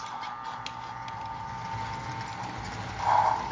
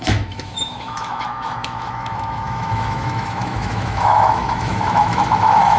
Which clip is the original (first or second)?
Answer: first